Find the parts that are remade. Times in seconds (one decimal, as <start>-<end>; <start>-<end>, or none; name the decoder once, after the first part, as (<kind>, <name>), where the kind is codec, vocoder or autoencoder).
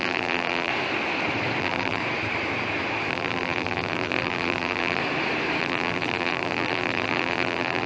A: 0.0-0.7 (vocoder, BigVGAN v2); 1.6-2.0; 3.1-5.0; 5.6-7.9